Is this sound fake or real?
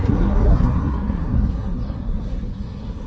fake